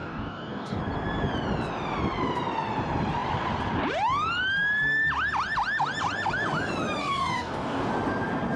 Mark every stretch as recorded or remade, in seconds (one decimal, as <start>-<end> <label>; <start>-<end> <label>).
0.0-0.8 remade; 0.8-7.0 recorded; 7.0-7.9 remade; 7.9-8.6 recorded